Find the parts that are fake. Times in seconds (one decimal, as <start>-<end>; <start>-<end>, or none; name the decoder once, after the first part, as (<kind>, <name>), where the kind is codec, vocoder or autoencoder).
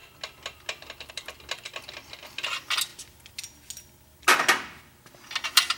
none